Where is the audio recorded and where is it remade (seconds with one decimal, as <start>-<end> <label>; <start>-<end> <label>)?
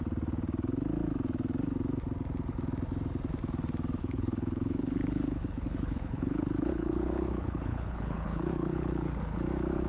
0.0-4.0 recorded; 4.0-9.2 remade; 9.2-9.9 recorded